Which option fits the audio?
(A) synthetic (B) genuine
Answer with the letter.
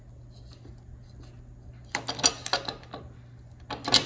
B